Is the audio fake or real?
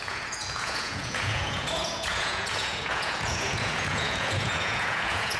fake